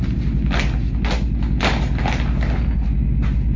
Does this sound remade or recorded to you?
recorded